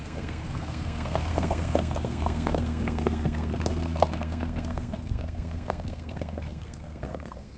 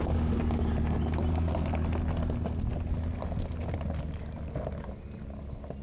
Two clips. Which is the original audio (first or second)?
second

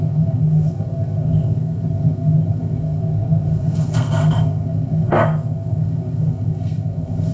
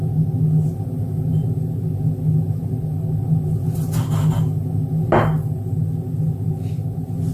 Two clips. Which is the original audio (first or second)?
second